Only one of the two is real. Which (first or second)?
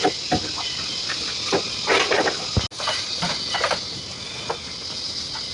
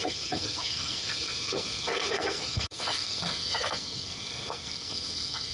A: first